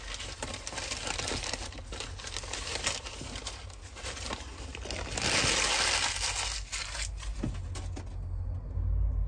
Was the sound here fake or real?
real